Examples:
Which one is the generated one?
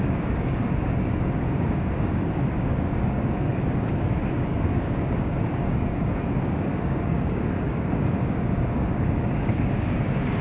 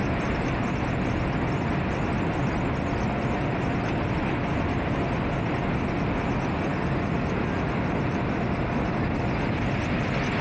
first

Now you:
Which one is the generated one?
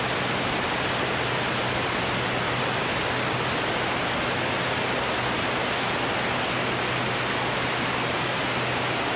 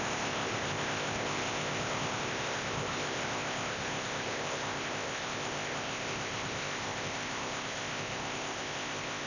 second